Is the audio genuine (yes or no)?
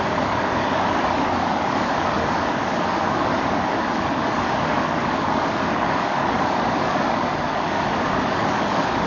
no